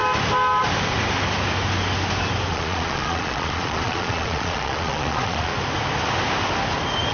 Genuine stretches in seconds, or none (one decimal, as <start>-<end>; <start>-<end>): 0.0-2.5; 5.5-7.1